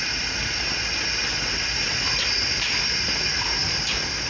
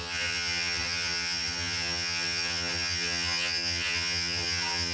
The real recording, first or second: first